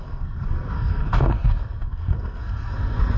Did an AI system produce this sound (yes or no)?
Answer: yes